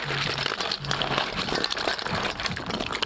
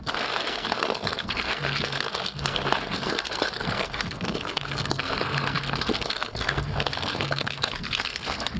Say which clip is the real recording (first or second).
first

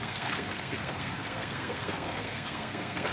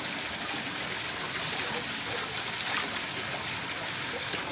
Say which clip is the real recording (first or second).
second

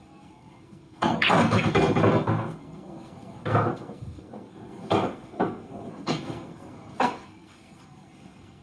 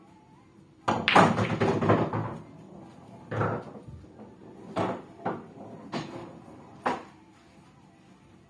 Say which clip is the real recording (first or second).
second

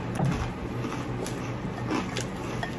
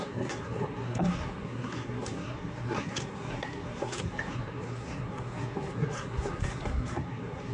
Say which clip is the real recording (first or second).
first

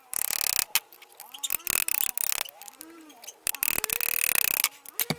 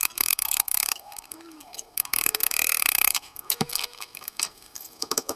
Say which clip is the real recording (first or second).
first